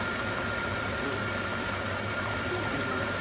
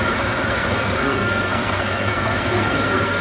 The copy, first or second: second